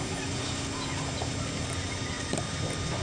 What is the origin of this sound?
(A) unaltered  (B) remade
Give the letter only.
A